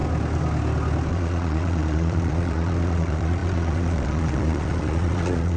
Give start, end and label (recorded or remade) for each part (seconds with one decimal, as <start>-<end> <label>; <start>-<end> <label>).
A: 0.0-1.1 recorded; 1.1-5.6 remade